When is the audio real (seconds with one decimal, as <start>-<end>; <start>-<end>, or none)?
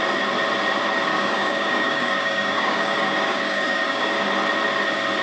0.0-1.1; 4.2-5.2